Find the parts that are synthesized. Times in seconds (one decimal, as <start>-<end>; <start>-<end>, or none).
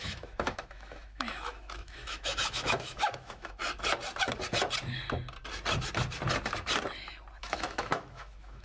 0.0-3.6; 7.4-8.6